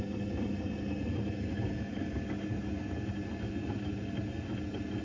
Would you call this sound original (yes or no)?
yes